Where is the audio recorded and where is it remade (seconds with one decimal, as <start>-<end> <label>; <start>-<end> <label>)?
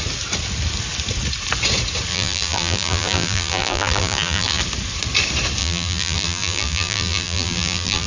0.0-2.1 recorded; 2.1-4.6 remade; 4.6-5.6 recorded; 5.6-8.1 remade